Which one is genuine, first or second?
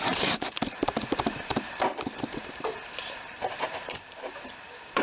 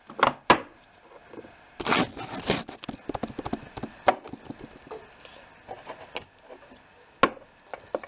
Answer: second